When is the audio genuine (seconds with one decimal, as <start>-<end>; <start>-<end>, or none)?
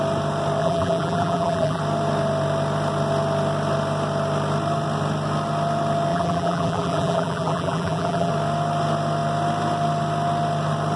0.0-0.6; 1.8-6.1; 8.3-11.0